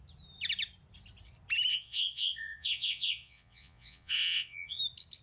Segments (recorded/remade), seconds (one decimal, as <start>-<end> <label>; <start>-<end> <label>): 0.0-1.7 recorded; 1.7-4.8 remade; 4.8-5.2 recorded